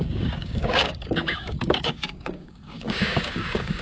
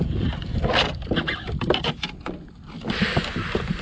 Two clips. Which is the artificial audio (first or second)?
first